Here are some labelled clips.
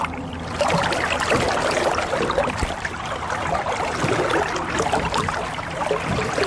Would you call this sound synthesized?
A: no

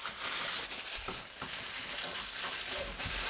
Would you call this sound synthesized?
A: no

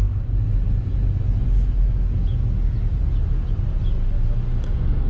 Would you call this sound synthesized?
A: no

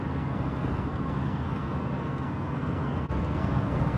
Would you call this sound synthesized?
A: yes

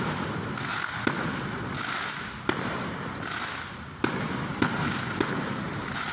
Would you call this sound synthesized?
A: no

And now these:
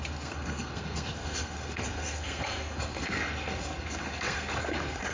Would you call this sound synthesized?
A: yes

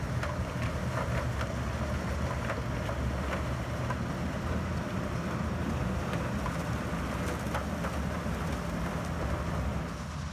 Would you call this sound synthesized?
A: no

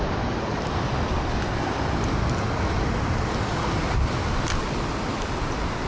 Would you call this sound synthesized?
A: no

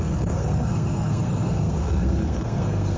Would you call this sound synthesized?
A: yes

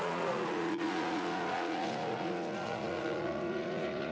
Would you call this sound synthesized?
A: yes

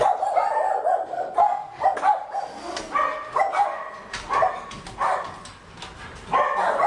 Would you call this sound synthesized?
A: no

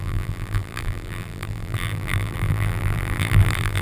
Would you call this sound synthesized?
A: yes